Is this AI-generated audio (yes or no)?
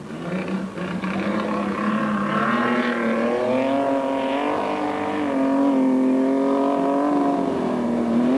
no